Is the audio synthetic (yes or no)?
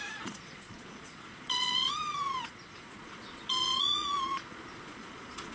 yes